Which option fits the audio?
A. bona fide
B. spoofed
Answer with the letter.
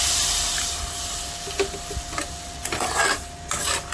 A